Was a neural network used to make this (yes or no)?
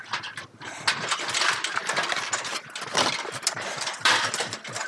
no